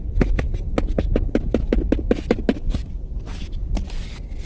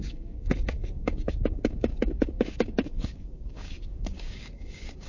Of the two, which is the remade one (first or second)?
second